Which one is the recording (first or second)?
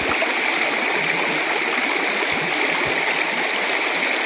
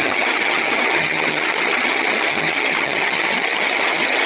first